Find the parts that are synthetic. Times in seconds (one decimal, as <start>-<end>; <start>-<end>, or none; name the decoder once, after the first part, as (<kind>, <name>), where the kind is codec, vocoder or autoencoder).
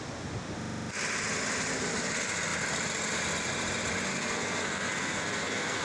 4.1-5.8 (codec, SNAC)